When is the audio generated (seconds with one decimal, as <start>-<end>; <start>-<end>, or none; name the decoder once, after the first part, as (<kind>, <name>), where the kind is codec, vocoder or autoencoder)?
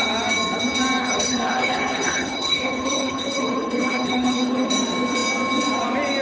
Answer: 1.0-4.7 (codec, HILCodec)